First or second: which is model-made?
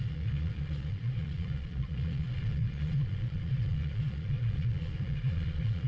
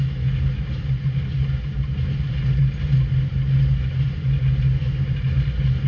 first